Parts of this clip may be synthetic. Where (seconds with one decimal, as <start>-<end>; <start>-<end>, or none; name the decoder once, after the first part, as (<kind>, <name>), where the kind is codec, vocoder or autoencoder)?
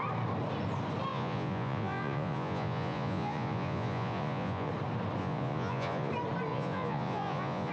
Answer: 1.1-4.7 (vocoder, Vocos); 5.2-6.1; 6.5-7.7